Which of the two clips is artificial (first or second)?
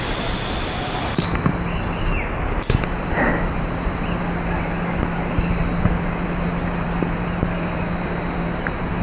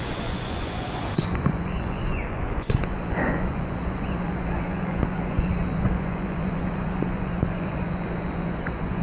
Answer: second